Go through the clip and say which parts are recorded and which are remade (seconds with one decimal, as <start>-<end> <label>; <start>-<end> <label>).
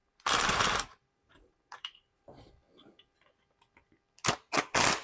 0.0-2.5 remade; 2.5-5.0 recorded